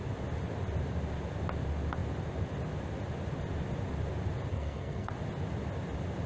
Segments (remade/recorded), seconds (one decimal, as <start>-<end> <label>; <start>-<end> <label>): 0.0-4.5 recorded; 4.5-5.1 remade; 5.1-6.3 recorded